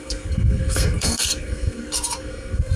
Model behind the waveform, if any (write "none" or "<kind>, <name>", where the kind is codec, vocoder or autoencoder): codec, SNAC